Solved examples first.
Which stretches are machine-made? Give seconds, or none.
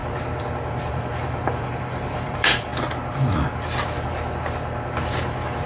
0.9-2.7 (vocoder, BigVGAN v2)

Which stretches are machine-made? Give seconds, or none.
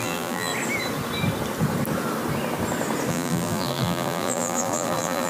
0.0-0.5 (vocoder, BigVGAN v2); 3.1-5.3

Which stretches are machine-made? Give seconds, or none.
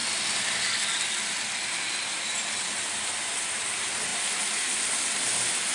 none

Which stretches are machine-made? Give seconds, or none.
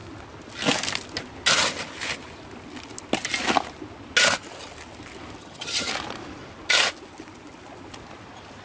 5.4-5.9 (vocoder, HiFi-GAN)